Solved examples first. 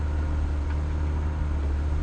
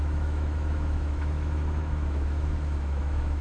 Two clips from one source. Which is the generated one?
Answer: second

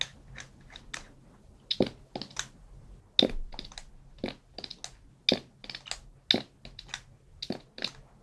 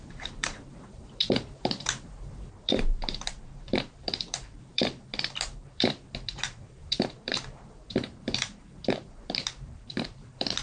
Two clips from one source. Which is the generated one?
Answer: second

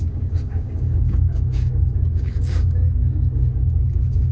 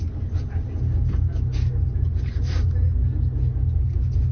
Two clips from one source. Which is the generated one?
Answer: first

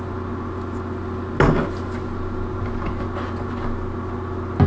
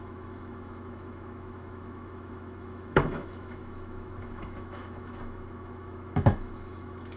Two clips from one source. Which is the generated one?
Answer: second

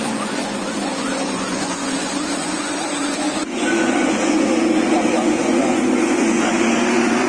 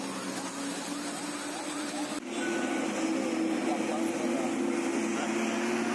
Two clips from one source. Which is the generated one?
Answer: first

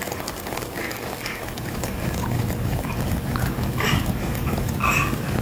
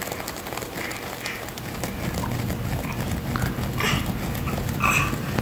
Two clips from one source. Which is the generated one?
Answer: first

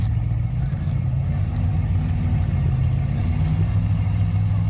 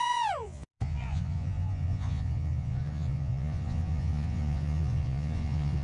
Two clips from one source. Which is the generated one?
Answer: second